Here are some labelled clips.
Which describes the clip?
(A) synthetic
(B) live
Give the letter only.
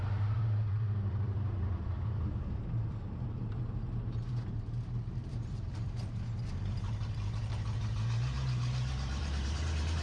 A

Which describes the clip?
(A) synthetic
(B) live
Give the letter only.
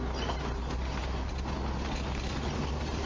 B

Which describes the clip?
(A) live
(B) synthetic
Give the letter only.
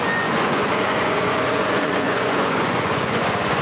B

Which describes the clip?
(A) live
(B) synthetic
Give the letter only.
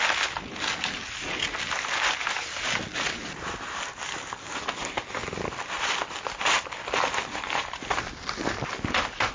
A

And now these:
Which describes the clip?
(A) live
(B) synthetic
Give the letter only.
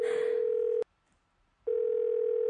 A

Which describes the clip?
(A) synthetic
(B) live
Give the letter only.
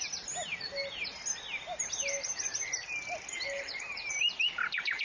B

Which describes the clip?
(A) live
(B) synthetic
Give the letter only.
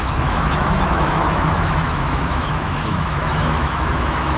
B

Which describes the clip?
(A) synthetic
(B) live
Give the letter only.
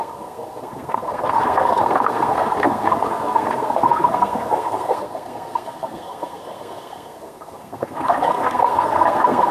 A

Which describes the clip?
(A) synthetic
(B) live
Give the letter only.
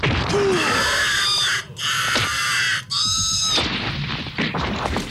B